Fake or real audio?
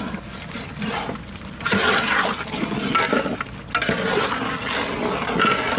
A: real